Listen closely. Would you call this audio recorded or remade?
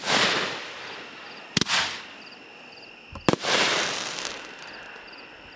recorded